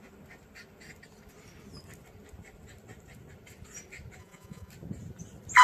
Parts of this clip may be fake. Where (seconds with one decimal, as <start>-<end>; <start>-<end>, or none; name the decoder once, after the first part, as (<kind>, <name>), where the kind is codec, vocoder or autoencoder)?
4.2-4.7 (vocoder, Vocos)